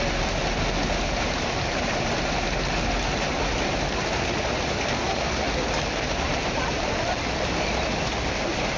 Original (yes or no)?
yes